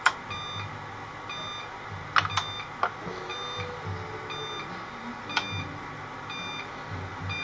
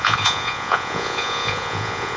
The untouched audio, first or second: first